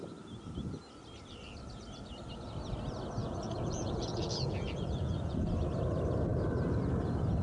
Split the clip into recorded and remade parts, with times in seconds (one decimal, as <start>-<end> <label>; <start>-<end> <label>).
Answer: 0.0-3.2 recorded; 3.2-5.5 remade; 5.5-7.4 recorded